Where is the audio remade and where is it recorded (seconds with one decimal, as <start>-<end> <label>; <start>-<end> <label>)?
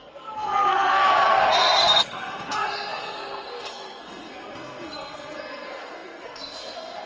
0.0-7.1 remade